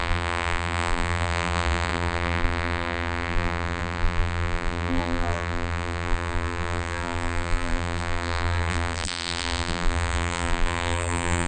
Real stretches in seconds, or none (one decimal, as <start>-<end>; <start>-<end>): none